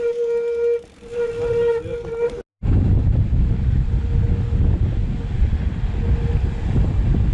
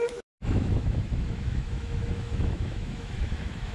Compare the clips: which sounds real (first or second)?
first